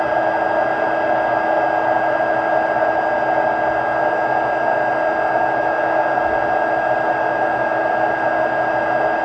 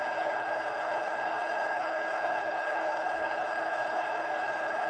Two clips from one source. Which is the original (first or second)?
first